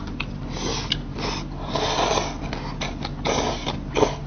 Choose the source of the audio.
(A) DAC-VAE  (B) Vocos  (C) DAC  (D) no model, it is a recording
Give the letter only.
D